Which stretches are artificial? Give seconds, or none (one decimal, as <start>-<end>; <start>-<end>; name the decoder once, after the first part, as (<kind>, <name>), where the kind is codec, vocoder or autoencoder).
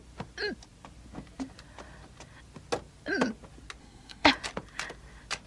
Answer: 3.8-4.3 (codec, SNAC)